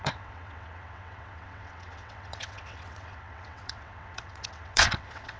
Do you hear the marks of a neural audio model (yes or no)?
yes